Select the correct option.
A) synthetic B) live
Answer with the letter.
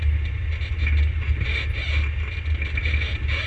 B